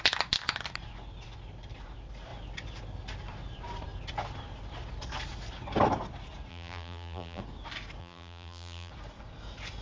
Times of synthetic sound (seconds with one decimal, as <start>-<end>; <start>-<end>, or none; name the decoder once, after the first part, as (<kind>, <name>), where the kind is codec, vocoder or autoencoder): 6.5-7.4 (vocoder, BigVGAN v2); 8.0-8.9